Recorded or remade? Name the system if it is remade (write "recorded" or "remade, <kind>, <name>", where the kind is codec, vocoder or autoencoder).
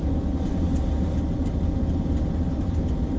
remade, vocoder, BigVGAN v2